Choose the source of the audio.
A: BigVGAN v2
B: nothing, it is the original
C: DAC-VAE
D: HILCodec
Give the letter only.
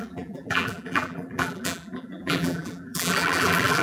A